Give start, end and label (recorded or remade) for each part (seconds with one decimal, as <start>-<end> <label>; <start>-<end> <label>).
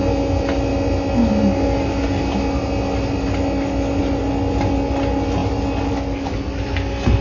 0.0-7.2 recorded